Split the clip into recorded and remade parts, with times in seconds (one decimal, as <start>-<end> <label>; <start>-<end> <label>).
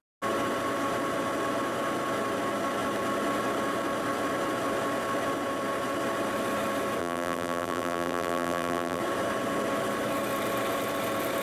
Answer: 0.0-7.0 recorded; 7.0-9.0 remade; 9.0-11.4 recorded